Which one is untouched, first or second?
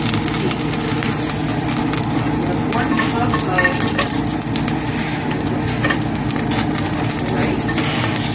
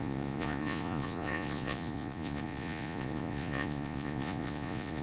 first